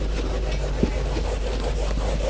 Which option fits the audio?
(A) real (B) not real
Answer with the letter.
B